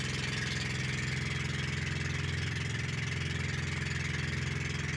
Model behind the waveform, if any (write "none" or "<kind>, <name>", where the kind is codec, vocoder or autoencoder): none